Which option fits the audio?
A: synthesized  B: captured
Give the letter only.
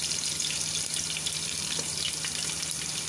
A